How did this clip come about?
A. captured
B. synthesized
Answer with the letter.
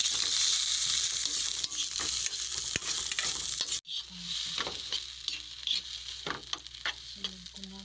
A